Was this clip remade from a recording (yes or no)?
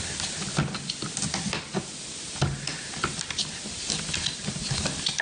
no